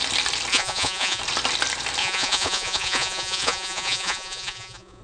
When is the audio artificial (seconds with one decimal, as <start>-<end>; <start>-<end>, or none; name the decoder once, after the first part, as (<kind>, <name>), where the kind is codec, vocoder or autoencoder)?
0.5-1.2 (vocoder, Vocos); 2.0-5.0